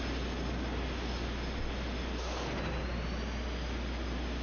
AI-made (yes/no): no